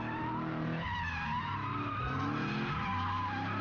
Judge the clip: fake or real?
real